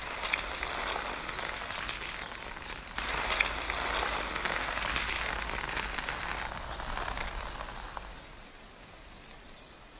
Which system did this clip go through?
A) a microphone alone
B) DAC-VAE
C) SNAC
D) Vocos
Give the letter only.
A